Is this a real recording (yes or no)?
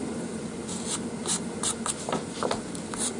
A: yes